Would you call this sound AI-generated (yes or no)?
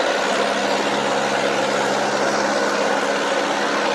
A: no